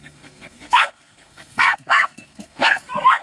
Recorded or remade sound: remade